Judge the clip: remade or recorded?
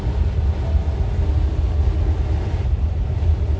recorded